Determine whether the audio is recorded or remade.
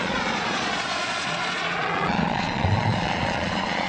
remade